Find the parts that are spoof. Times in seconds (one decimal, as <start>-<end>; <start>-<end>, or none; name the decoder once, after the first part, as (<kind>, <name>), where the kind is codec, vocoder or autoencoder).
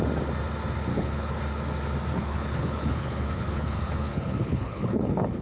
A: 0.9-1.4 (codec, HILCodec); 2.1-5.4